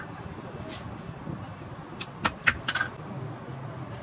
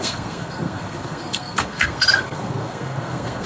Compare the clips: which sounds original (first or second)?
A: first